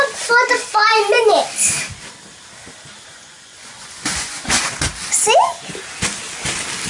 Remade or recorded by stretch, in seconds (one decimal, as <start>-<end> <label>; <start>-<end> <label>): 0.0-3.1 recorded; 3.1-4.7 remade; 4.7-6.9 recorded